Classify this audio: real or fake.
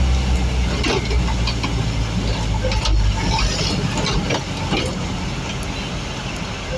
real